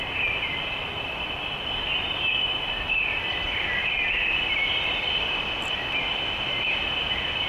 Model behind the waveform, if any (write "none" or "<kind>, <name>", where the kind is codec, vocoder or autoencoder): none